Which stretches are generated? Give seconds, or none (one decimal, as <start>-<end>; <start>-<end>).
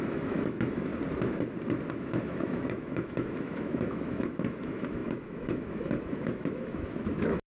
0.0-0.9; 1.9-7.5